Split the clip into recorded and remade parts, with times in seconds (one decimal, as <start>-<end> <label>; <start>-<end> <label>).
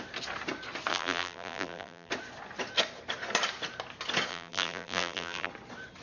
0.0-0.9 recorded; 0.9-2.1 remade; 2.1-4.3 recorded; 4.3-5.5 remade; 5.5-6.0 recorded